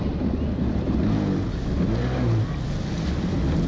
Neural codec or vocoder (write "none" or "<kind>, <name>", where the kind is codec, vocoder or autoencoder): none